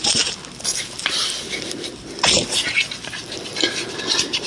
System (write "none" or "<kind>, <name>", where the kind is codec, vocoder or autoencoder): vocoder, BigVGAN v2